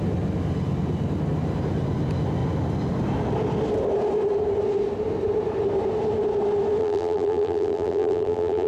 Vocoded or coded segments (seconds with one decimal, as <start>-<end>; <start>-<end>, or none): 6.8-8.7